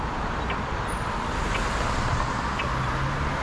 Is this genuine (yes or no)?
yes